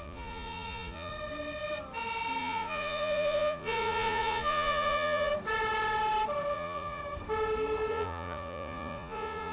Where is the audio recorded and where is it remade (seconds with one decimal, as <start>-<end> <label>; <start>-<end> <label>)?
0.0-1.1 remade; 1.1-2.4 recorded; 2.4-5.3 remade; 5.3-6.5 recorded; 6.5-7.0 remade; 7.0-7.9 recorded; 7.9-9.5 remade